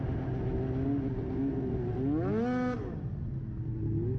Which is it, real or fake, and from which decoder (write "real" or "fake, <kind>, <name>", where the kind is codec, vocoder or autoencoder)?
real